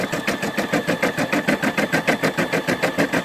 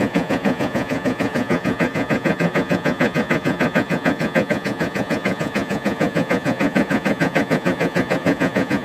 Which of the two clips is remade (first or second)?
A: second